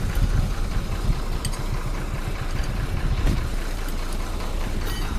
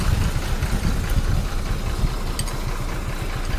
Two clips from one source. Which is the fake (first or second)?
first